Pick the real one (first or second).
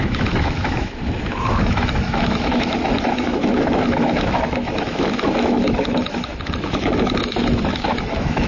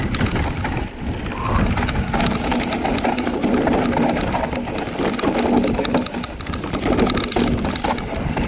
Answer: second